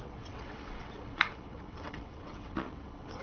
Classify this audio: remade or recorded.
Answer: remade